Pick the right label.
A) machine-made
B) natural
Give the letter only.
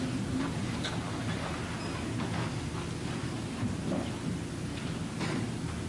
B